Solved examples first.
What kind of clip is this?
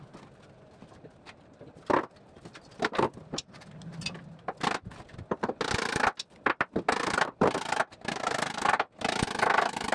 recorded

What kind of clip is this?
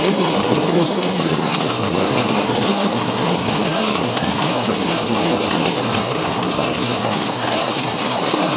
remade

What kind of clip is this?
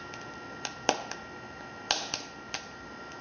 recorded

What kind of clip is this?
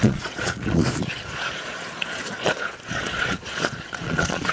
remade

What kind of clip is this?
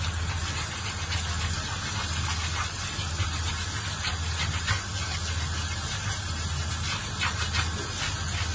recorded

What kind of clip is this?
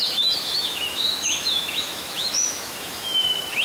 remade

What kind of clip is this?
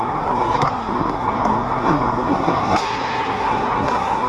remade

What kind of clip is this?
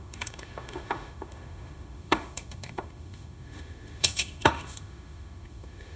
remade